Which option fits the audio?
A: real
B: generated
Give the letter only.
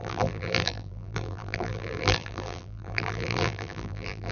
B